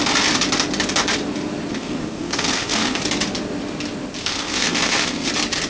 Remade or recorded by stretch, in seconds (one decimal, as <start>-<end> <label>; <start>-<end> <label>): 0.0-1.7 recorded; 1.7-3.0 remade; 3.0-4.2 recorded; 4.2-5.3 remade; 5.3-5.7 recorded